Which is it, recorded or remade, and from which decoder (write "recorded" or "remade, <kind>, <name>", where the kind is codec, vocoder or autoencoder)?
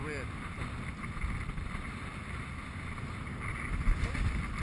recorded